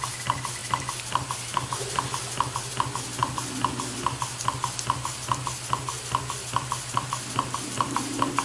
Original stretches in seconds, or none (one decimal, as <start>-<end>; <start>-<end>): 0.0-8.4